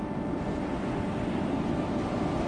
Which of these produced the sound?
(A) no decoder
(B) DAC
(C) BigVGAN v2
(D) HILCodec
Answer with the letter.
A